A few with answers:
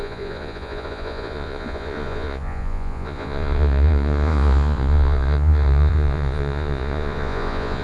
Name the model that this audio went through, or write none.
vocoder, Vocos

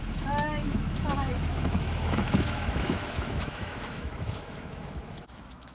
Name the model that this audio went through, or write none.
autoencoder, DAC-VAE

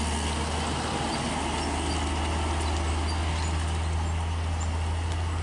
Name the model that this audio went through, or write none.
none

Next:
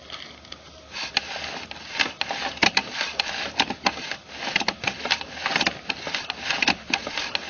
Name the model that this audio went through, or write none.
none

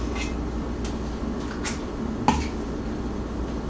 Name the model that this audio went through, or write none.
none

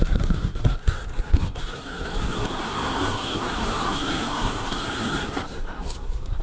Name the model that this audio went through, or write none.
codec, SNAC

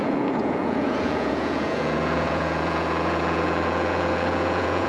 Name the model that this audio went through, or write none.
vocoder, Vocos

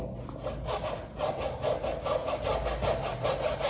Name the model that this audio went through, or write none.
none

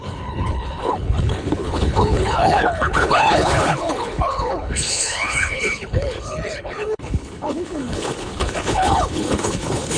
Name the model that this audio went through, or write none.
codec, HILCodec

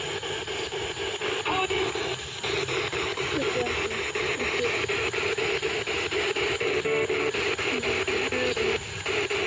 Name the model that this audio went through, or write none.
none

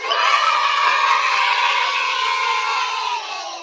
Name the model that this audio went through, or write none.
vocoder, HiFi-GAN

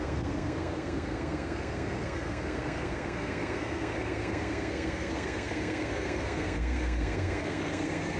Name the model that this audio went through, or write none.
codec, SNAC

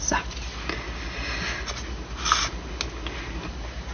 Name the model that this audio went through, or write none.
none